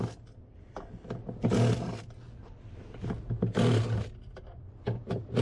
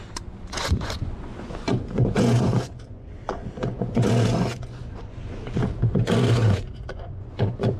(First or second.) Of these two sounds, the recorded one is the first